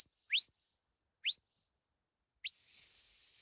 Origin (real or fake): real